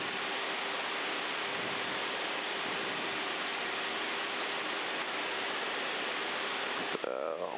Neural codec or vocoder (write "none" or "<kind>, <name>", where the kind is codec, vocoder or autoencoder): none